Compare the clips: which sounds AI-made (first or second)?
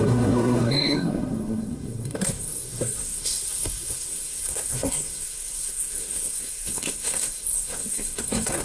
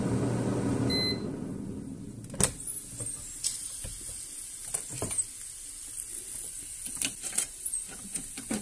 first